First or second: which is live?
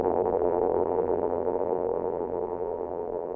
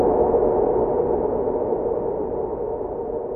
second